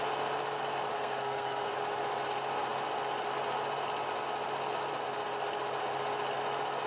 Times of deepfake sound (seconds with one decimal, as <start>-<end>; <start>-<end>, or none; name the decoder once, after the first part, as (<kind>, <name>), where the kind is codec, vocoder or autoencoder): 0.9-1.7 (codec, SNAC)